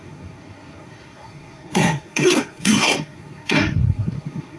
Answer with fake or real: fake